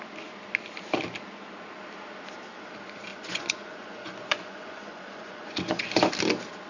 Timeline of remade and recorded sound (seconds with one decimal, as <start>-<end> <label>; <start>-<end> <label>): 0.0-3.1 recorded; 3.1-6.1 remade; 6.1-6.7 recorded